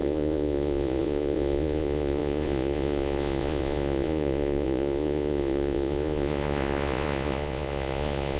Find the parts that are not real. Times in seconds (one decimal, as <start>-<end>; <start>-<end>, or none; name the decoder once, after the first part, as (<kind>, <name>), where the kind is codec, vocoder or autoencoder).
0.0-8.4 (vocoder, Vocos)